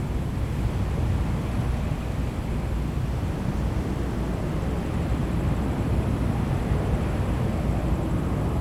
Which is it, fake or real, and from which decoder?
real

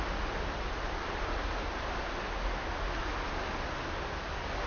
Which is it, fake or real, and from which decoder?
real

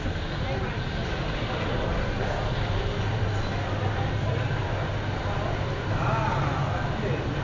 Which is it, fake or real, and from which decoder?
real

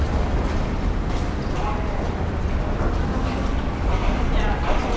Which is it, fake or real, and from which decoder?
real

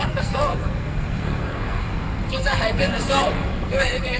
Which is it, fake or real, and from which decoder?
fake, codec, SNAC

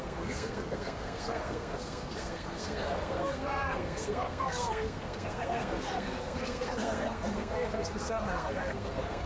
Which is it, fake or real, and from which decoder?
fake, codec, SNAC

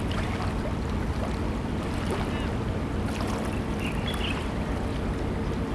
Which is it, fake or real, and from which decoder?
real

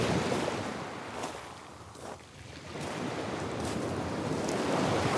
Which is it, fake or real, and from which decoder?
real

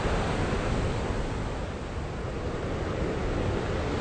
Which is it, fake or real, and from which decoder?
real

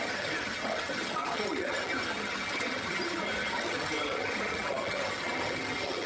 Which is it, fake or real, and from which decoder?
fake, vocoder, HiFi-GAN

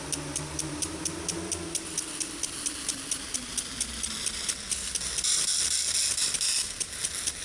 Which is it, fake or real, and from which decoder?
real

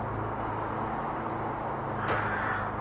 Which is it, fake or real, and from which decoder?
real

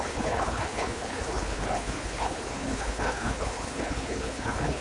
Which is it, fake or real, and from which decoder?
fake, codec, HILCodec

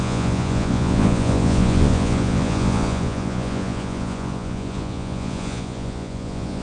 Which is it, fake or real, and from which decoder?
fake, vocoder, Vocos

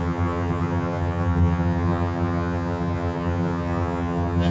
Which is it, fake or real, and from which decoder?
fake, vocoder, HiFi-GAN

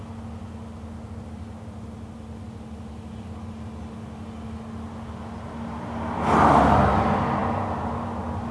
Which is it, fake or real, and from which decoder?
real